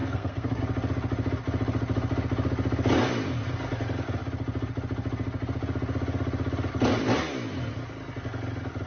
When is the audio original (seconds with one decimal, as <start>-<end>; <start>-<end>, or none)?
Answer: 0.6-8.9